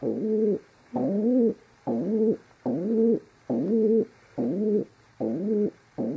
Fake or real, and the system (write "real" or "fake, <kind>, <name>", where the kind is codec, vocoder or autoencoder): real